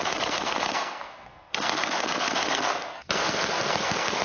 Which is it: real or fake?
fake